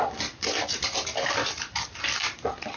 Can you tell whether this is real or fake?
fake